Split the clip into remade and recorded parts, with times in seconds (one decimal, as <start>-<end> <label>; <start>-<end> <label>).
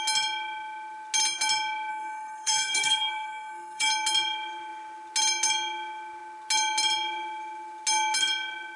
0.0-1.9 recorded; 1.9-3.9 remade; 3.9-8.8 recorded